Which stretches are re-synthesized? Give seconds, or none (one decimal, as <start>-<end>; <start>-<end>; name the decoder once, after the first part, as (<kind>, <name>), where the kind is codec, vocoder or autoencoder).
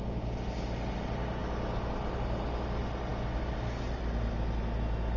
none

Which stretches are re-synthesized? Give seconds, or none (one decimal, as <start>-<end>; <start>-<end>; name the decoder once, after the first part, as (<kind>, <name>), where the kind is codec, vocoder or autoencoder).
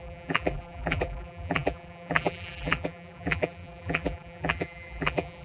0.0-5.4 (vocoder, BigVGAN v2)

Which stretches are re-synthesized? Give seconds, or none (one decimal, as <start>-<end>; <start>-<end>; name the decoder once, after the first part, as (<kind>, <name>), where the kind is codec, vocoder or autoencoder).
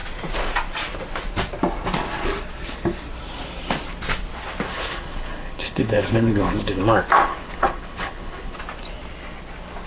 4.7-6.8 (codec, HILCodec); 7.3-8.6